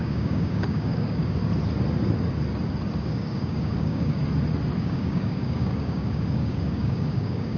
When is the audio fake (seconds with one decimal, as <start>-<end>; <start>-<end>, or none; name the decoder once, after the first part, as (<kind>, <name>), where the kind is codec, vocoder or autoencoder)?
0.0-1.4 (codec, DAC); 3.0-4.2; 4.8-7.6